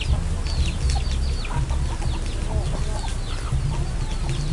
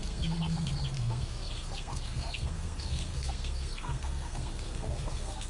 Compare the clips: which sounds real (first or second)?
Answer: first